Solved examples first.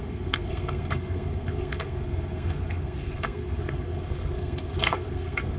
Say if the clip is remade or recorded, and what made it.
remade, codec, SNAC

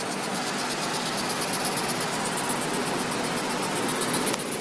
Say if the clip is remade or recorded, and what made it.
recorded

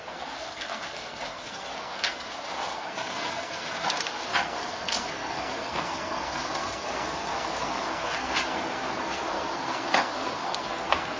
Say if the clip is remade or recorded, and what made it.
remade, codec, SNAC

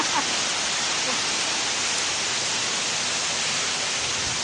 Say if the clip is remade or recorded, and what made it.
recorded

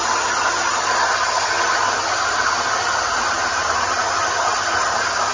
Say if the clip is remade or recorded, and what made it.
recorded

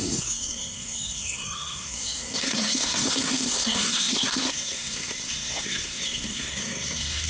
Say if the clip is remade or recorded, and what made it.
remade, codec, SNAC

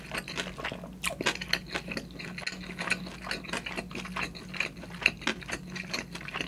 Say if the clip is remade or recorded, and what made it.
recorded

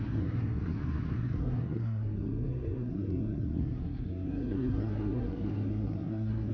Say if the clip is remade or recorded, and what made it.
remade, codec, SNAC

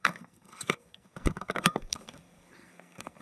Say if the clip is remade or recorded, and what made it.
remade, codec, SNAC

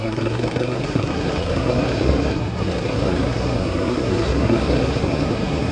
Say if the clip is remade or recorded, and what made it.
remade, codec, SNAC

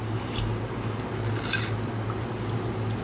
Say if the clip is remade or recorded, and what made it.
recorded